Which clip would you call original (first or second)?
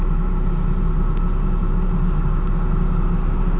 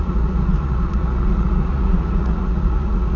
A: first